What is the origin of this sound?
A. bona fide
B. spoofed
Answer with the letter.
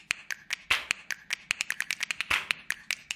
A